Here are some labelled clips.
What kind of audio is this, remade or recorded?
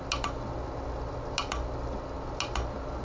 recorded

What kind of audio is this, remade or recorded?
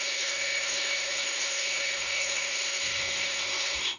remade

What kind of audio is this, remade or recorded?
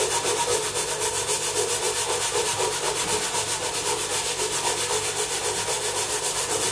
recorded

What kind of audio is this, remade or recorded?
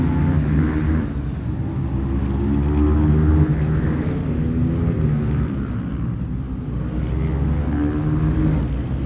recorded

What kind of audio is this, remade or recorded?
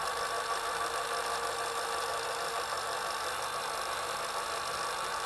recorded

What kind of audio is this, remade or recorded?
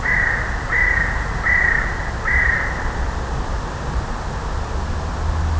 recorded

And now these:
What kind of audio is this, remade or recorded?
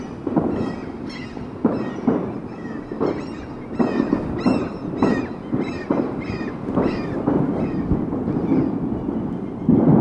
recorded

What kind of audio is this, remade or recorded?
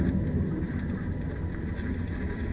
recorded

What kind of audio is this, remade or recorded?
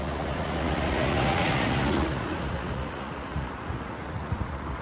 remade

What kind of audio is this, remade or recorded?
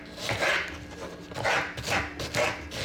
recorded